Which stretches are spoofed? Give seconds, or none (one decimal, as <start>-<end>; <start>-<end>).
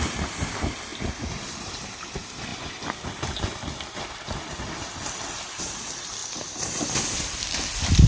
none